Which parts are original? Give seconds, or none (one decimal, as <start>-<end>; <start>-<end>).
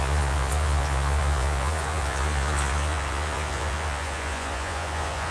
none